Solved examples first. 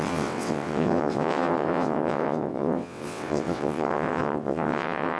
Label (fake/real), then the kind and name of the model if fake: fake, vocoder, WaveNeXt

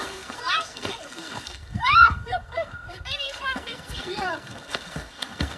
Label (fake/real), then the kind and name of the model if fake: fake, codec, SNAC